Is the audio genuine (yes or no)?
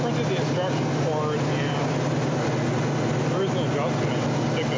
yes